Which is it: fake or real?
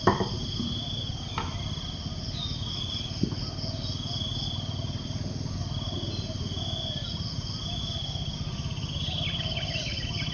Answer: real